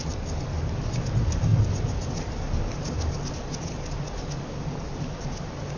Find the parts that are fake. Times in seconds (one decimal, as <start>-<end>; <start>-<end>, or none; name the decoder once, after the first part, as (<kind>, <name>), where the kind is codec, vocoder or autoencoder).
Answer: none

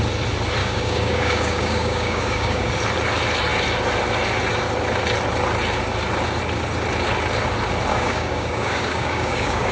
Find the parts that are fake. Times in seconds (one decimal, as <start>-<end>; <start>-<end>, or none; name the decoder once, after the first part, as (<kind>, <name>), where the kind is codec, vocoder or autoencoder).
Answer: 0.6-2.7 (codec, DAC); 7.9-9.7

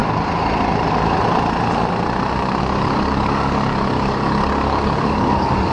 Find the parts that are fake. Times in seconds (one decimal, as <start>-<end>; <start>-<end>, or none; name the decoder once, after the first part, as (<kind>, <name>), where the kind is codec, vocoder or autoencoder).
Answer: 2.6-5.7 (codec, DAC)

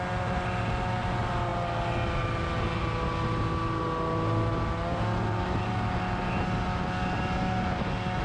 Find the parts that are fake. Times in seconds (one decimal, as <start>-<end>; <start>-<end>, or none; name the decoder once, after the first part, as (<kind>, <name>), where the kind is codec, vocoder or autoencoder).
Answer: none

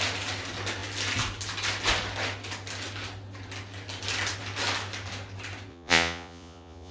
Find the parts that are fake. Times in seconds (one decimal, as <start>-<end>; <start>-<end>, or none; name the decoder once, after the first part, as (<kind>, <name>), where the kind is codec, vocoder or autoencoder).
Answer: 5.7-6.9 (vocoder, Vocos)

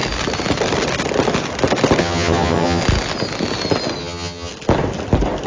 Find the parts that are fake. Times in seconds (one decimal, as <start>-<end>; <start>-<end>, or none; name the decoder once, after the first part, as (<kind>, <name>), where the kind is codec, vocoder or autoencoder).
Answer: 2.0-2.8 (vocoder, HiFi-GAN); 4.0-4.5

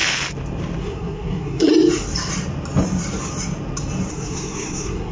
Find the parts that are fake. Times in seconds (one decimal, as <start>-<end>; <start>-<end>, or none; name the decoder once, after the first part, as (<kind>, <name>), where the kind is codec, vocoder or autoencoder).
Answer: 0.8-1.7 (codec, SNAC); 4.1-5.1

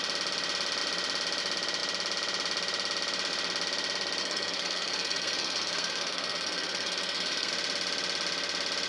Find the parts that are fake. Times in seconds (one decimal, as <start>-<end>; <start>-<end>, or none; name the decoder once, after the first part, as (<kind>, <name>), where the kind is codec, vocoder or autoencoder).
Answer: 4.2-7.5 (codec, SNAC)